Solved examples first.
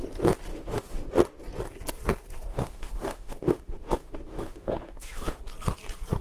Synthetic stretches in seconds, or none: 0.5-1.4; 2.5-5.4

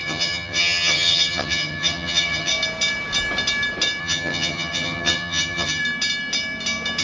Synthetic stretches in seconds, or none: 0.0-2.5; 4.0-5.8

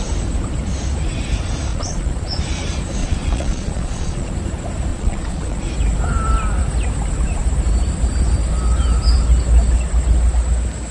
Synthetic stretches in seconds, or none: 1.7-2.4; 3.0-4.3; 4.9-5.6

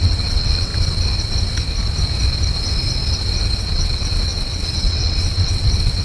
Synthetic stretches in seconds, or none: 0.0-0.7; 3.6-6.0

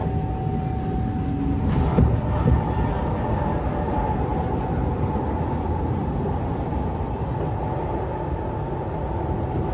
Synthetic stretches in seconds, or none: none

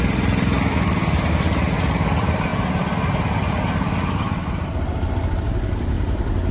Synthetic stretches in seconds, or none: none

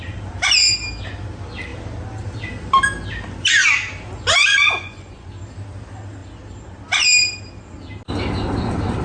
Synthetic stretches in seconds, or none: 4.4-5.3